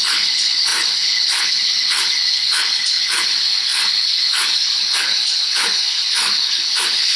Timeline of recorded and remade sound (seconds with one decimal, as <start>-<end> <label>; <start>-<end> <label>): 0.0-7.2 remade